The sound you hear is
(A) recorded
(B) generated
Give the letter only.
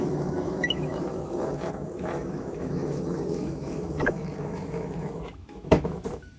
B